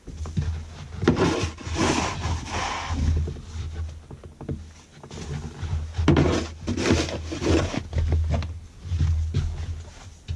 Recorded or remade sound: recorded